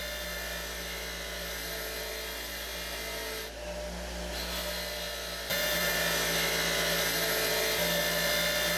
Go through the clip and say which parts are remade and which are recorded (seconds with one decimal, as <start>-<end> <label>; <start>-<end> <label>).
0.0-5.5 recorded; 5.5-6.0 remade; 6.0-8.8 recorded